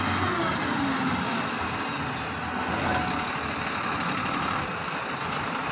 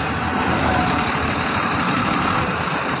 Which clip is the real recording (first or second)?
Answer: first